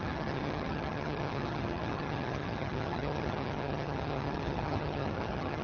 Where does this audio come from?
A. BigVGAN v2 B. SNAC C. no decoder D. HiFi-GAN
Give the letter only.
D